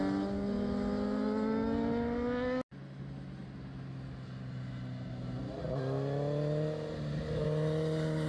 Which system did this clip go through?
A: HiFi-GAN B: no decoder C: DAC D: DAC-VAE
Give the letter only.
B